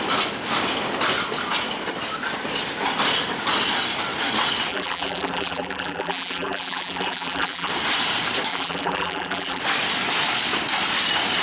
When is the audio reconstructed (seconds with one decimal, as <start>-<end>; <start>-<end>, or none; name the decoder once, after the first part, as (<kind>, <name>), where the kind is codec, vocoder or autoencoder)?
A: 4.7-7.7 (vocoder, BigVGAN v2); 8.5-9.6